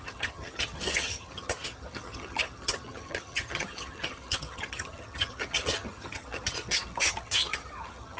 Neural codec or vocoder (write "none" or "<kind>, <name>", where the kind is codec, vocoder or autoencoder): vocoder, HiFi-GAN